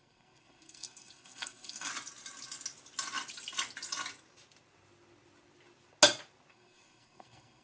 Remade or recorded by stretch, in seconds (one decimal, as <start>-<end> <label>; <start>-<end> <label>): 0.0-1.9 remade; 1.9-6.5 recorded; 6.5-7.6 remade